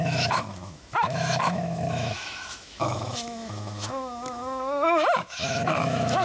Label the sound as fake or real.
fake